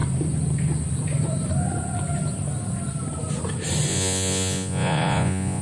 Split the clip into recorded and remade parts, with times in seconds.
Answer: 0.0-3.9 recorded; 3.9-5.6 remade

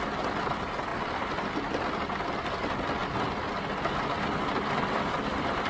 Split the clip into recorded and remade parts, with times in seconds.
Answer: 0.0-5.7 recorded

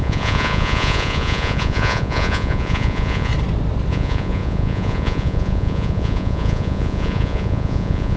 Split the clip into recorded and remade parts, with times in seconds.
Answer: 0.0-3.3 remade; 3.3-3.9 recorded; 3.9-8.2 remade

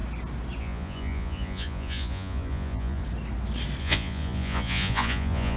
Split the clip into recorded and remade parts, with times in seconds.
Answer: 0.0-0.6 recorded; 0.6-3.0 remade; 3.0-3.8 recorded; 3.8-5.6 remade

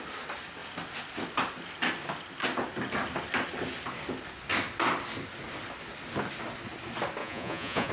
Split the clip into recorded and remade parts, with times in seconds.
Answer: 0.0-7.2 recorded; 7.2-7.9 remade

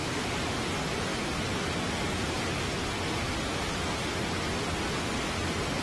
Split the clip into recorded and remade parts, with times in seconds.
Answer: 0.0-5.8 recorded

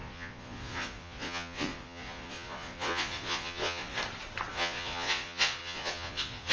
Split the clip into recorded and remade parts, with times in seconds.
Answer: 0.0-4.0 remade; 4.0-4.5 recorded; 4.5-6.5 remade

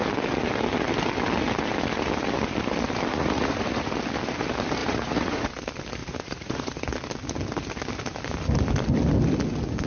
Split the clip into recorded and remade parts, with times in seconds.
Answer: 0.0-3.1 recorded; 3.1-3.9 remade; 3.9-4.8 recorded; 4.8-5.5 remade; 5.5-6.0 recorded; 6.0-6.8 remade; 6.8-9.9 recorded